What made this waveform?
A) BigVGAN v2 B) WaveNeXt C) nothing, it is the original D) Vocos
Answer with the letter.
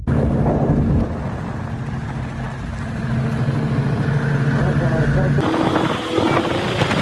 C